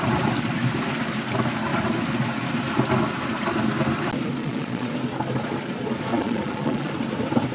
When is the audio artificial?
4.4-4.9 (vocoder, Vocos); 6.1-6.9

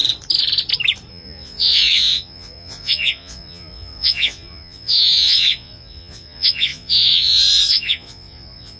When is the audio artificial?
1.1-8.8 (vocoder, Vocos)